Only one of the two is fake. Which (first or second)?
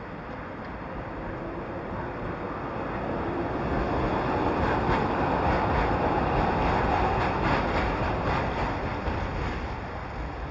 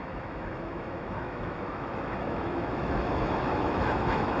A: second